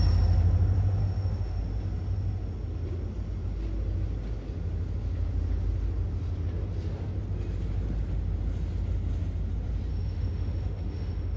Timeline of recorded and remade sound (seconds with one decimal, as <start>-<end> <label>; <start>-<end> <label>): 0.0-1.0 recorded; 1.0-1.6 remade; 1.6-9.9 recorded; 9.9-11.4 remade